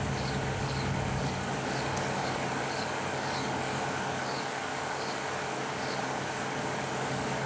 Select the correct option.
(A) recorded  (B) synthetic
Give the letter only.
B